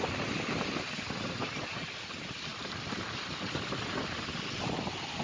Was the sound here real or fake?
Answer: real